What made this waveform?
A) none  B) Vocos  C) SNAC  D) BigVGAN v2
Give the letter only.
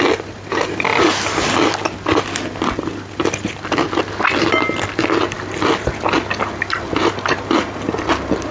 A